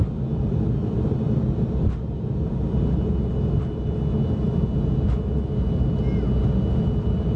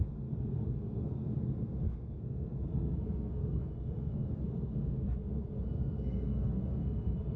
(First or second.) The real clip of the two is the first